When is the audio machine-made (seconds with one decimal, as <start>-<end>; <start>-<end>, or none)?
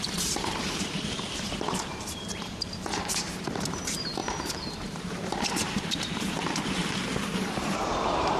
0.0-6.8; 7.4-8.4